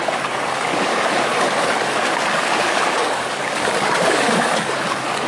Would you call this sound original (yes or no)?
no